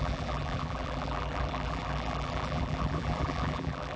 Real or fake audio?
fake